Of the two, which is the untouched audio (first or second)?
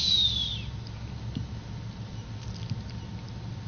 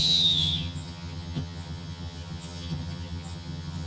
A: first